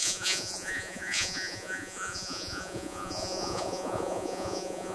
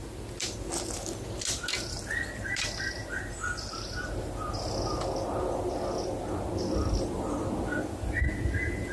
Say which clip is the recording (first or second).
second